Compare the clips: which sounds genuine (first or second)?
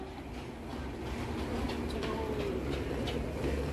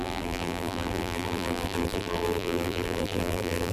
first